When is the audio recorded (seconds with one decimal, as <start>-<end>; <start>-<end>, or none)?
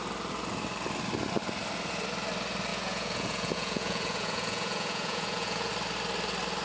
0.0-2.7; 5.7-6.6